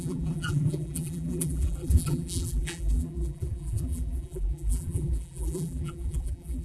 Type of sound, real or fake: fake